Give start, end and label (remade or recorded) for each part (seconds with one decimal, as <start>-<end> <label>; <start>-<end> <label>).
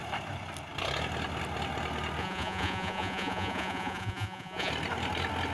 0.0-2.2 recorded; 2.2-4.7 remade; 4.7-5.5 recorded